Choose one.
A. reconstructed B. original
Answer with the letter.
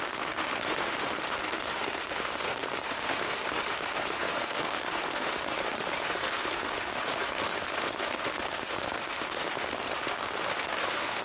A